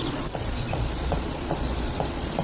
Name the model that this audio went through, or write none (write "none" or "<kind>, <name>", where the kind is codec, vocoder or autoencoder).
vocoder, Vocos